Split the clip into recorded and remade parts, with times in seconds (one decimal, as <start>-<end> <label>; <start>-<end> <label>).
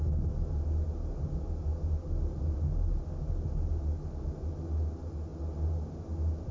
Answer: 0.0-6.5 recorded